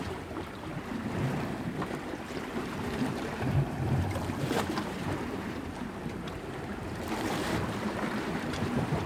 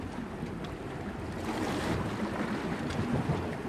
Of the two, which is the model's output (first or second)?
first